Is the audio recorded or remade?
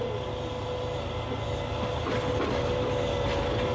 recorded